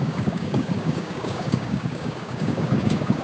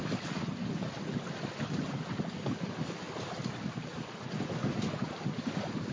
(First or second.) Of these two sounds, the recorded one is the second